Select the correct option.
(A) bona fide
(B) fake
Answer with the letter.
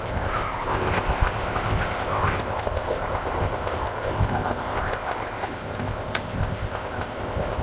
B